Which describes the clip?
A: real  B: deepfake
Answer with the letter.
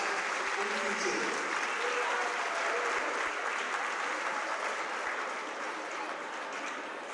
A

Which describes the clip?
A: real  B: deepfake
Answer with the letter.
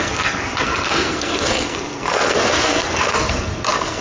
B